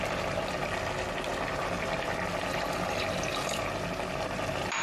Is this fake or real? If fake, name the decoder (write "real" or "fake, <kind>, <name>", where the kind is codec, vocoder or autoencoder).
real